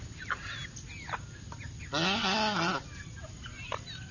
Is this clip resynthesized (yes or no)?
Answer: no